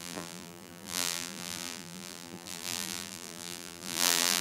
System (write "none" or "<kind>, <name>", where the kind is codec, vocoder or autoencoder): vocoder, BigVGAN v2